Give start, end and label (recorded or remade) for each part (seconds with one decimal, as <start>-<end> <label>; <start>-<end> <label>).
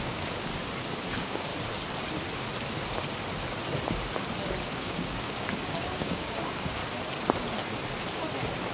0.0-0.5 remade; 0.5-1.1 recorded; 1.1-1.5 remade; 1.5-4.6 recorded; 4.6-6.8 remade; 6.8-8.7 recorded